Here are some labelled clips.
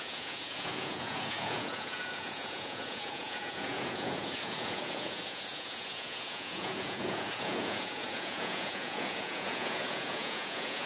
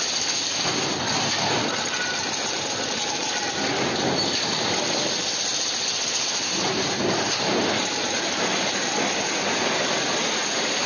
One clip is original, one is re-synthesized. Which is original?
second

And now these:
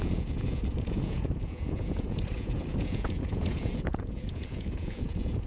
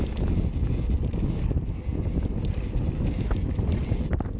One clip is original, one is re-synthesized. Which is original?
second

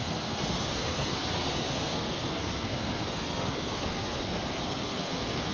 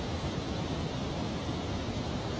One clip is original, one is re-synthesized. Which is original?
second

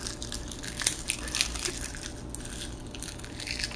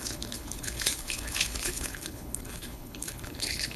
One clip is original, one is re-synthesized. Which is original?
first